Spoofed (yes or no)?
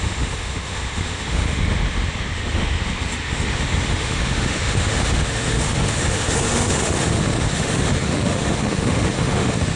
yes